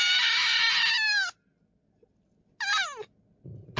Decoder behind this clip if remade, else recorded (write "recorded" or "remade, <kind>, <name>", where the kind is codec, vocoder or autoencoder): recorded